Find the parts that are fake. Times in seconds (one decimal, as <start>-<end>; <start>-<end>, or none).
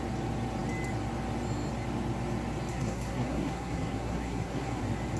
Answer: 2.7-4.8